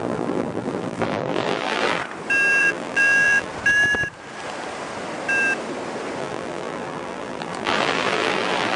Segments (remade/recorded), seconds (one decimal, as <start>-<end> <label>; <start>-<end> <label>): 0.0-2.0 remade; 2.0-2.6 recorded; 2.6-3.5 remade; 3.5-6.2 recorded; 6.2-8.8 remade